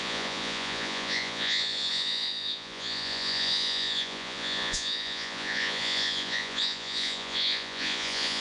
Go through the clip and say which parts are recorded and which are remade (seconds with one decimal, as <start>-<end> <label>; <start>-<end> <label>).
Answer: 0.0-8.4 remade

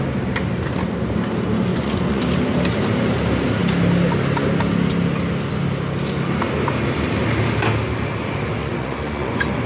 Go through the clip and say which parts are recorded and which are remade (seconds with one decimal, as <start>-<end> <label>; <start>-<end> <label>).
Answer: 0.0-1.7 recorded; 1.7-2.2 remade; 2.2-8.6 recorded; 8.6-9.7 remade

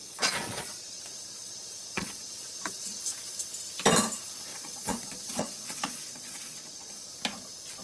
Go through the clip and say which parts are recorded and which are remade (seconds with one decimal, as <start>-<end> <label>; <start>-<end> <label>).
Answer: 0.0-3.0 remade; 3.0-4.5 recorded; 4.5-7.1 remade; 7.1-7.8 recorded

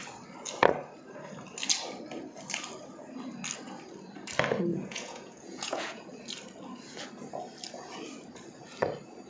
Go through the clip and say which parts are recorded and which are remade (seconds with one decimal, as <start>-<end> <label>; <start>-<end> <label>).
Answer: 0.0-4.7 recorded; 4.7-6.1 remade; 6.1-9.3 recorded

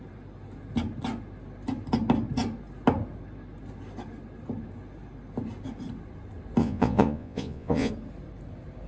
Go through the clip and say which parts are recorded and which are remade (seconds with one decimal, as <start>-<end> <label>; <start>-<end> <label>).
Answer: 0.0-6.6 recorded; 6.6-7.9 remade; 7.9-8.9 recorded

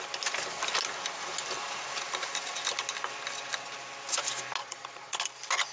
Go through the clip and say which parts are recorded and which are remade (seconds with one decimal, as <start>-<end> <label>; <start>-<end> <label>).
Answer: 0.0-4.6 recorded; 4.6-5.2 remade; 5.2-5.7 recorded

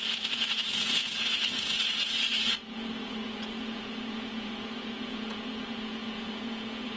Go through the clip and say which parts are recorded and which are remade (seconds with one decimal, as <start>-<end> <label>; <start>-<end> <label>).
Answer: 0.0-7.0 remade